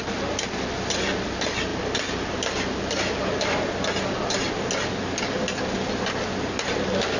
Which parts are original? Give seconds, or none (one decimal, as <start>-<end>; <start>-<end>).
0.0-7.2